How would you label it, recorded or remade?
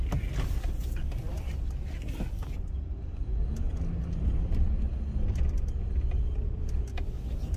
recorded